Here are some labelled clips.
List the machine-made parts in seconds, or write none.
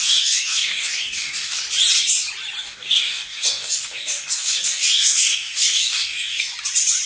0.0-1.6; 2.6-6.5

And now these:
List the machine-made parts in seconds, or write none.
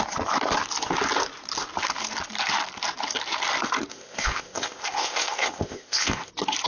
3.9-6.3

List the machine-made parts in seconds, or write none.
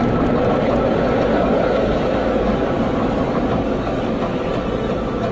1.3-4.5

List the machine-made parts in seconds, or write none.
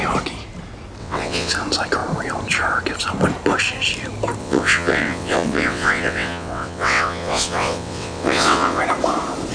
1.0-1.5; 4.4-8.8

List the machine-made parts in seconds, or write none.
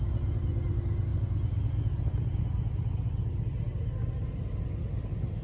none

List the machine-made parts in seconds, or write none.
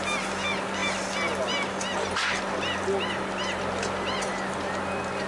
none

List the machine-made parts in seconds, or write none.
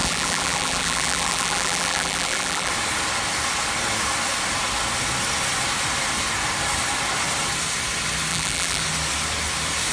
0.0-2.7; 8.3-8.8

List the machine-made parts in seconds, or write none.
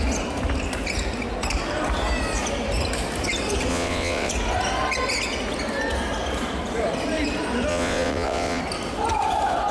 3.7-4.3; 7.7-8.6